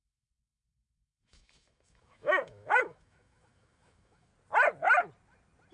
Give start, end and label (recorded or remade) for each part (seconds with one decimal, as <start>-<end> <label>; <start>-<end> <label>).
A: 0.0-4.3 remade; 4.3-5.7 recorded